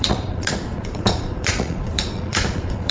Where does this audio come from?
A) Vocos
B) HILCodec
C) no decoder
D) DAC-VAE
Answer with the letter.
A